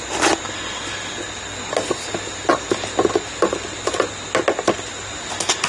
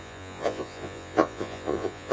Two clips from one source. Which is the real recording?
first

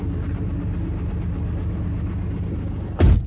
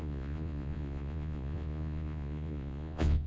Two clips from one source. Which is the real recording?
first